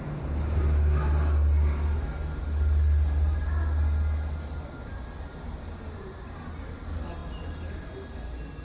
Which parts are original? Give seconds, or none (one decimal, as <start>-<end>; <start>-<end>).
0.0-8.6